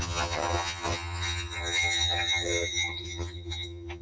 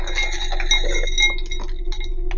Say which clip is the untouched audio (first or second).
second